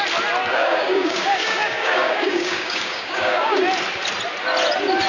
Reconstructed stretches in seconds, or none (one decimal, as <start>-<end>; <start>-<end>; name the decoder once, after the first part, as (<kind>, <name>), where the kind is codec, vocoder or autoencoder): 0.5-3.6 (codec, DAC)